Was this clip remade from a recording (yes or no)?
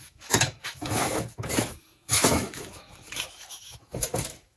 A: yes